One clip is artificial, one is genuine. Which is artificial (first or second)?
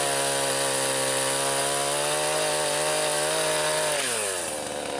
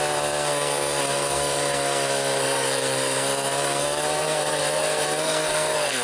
second